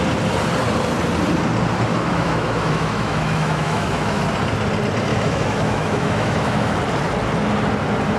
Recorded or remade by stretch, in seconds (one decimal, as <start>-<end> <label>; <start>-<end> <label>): 0.0-1.9 recorded; 1.9-4.2 remade; 4.2-5.1 recorded; 5.1-6.8 remade; 6.8-8.2 recorded